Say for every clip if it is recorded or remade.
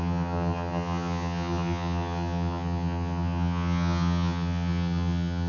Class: remade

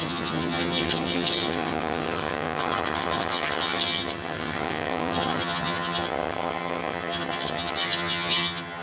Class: remade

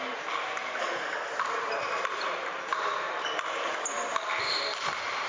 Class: recorded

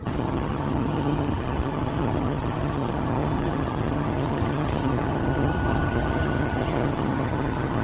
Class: remade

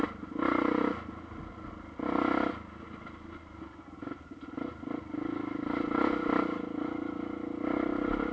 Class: recorded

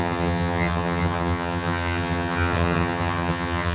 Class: remade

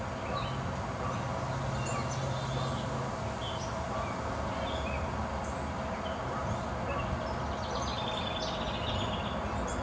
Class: recorded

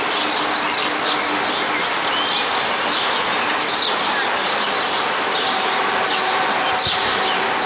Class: recorded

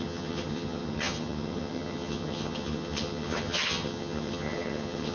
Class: remade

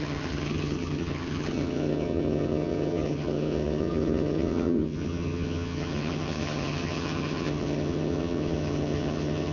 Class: remade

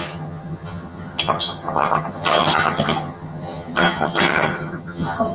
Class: remade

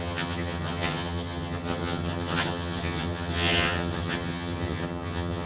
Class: remade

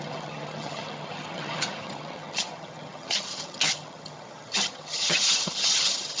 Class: remade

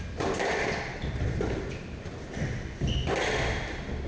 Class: recorded